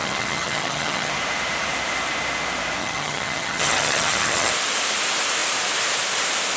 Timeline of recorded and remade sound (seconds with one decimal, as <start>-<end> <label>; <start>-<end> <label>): 0.0-1.1 remade; 1.1-2.8 recorded; 2.8-4.5 remade; 4.5-6.6 recorded